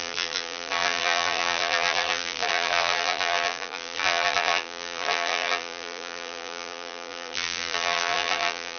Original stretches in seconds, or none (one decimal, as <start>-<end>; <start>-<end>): none

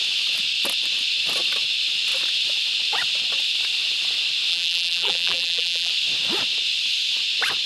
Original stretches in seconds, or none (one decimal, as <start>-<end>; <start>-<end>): 0.0-4.5; 5.9-7.7

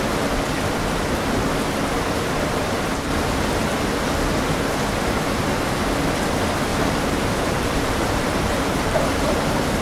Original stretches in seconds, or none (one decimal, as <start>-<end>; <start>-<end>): 0.0-6.7; 9.4-9.8

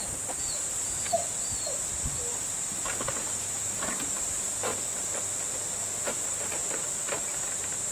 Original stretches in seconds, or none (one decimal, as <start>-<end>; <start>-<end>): 1.2-1.9; 2.3-3.4; 4.7-5.5

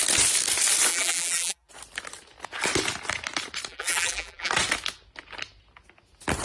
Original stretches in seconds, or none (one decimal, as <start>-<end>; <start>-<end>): 0.0-0.9; 1.7-3.7; 4.5-6.4

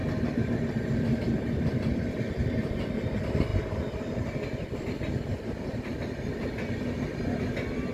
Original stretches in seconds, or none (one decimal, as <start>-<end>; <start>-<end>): 0.0-7.9

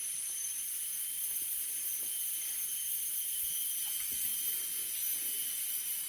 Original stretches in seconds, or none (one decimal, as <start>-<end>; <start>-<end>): 0.0-0.5; 0.9-3.9; 4.3-5.4

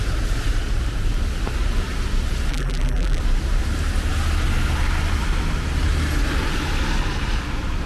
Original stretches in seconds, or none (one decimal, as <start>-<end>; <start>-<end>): 0.0-2.5; 3.2-7.9